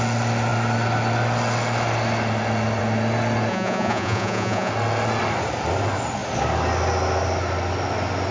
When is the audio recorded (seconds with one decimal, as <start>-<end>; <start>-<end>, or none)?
0.0-3.5; 4.7-8.3